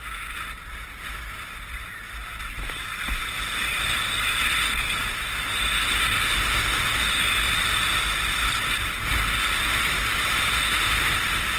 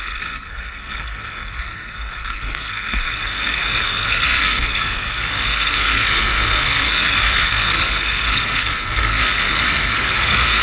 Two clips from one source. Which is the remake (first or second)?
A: second